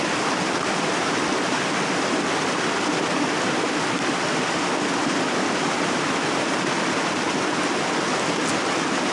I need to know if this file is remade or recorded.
recorded